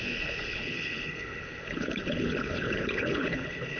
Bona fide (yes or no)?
no